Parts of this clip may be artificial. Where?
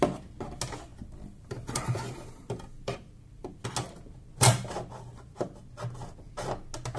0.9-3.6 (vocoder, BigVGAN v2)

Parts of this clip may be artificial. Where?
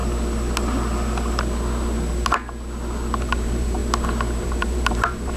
3.2-3.8 (vocoder, BigVGAN v2); 4.4-5.4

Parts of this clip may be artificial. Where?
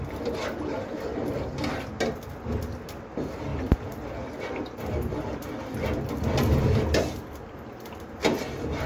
none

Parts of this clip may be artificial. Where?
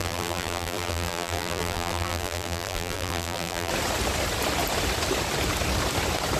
0.0-3.7 (vocoder, BigVGAN v2)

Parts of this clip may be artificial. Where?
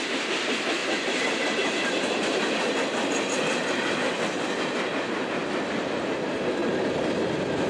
0.8-2.6 (vocoder, BigVGAN v2)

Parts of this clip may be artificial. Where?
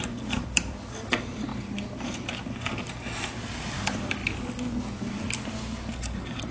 0.0-1.5 (vocoder, BigVGAN v2); 3.4-4.2; 6.0-6.5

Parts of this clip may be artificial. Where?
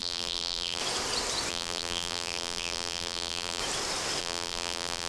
0.0-0.8 (vocoder, BigVGAN v2); 1.5-3.6; 4.2-5.1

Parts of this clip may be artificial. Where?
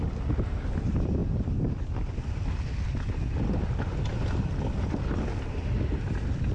0.0-1.2 (vocoder, BigVGAN v2); 3.4-6.5